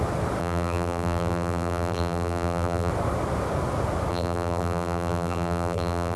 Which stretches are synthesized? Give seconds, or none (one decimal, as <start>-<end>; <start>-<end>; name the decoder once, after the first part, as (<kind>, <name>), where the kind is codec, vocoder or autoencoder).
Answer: 0.4-2.9 (vocoder, BigVGAN v2); 4.1-6.2